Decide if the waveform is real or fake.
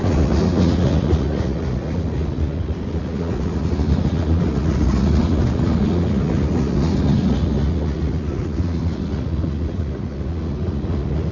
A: fake